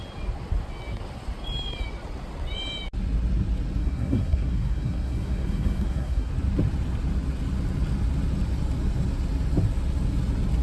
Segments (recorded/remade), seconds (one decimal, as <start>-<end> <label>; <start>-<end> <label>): 0.0-3.8 recorded; 3.8-6.3 remade; 6.3-10.6 recorded